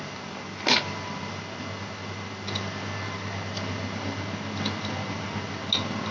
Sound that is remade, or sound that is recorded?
recorded